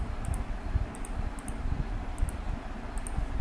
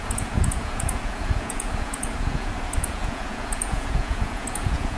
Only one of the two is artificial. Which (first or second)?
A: second